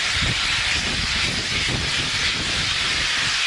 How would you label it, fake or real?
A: fake